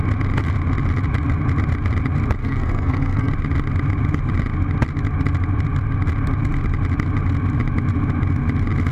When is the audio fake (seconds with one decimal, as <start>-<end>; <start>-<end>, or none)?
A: 2.4-3.3